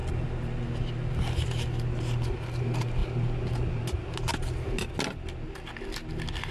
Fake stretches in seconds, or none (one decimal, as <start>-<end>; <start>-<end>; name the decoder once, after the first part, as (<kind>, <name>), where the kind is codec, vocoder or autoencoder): none

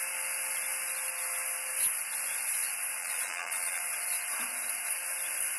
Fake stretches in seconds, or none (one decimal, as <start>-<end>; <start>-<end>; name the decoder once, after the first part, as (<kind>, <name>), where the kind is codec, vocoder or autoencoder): 3.0-3.8 (vocoder, Vocos)

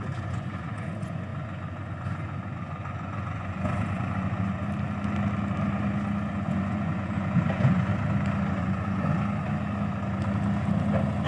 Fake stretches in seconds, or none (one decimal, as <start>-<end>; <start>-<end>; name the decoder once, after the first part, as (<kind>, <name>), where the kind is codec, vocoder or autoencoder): 0.0-4.6 (vocoder, Vocos); 6.3-7.9; 8.6-9.1

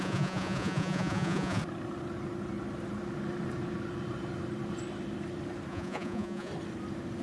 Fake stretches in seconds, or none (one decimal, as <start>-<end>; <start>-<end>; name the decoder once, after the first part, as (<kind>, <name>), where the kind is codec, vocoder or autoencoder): 0.0-1.6 (vocoder, Vocos); 5.7-6.5

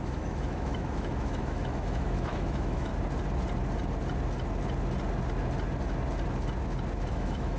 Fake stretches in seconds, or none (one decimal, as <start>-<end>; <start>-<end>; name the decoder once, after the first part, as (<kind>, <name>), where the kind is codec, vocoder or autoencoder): 0.0-2.9 (autoencoder, DAC-VAE); 7.1-7.6

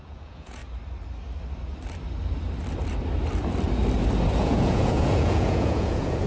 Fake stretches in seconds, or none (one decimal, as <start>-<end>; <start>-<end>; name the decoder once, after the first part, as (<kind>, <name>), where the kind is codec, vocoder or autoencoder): 0.0-0.6 (vocoder, Vocos); 4.4-6.3

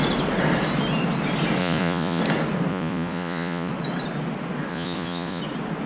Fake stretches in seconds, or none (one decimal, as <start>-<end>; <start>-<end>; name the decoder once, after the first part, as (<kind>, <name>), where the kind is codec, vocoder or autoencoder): 1.6-2.2 (vocoder, Vocos); 2.7-3.7; 4.7-5.4